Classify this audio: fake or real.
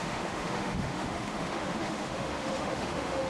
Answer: fake